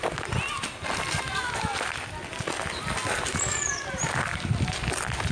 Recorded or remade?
recorded